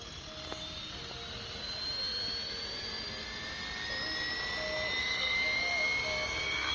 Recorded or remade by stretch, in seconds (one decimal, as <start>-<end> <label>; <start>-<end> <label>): 0.0-5.0 recorded; 5.0-6.7 remade